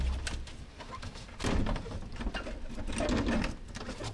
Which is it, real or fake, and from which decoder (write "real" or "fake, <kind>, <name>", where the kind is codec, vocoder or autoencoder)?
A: real